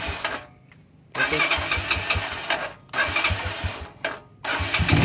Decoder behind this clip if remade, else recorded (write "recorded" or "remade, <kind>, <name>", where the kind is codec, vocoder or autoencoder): recorded